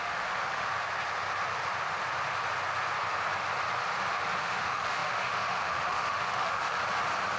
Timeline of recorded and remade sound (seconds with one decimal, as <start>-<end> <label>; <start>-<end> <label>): 0.0-0.7 remade; 0.7-4.4 recorded; 4.4-6.8 remade; 6.8-7.4 recorded